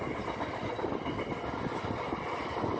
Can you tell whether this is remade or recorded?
recorded